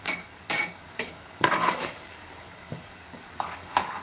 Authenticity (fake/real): fake